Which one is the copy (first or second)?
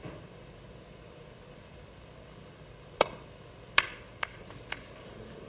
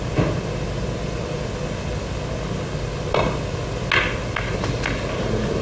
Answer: first